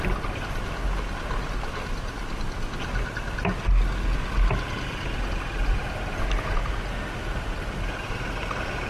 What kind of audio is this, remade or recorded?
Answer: recorded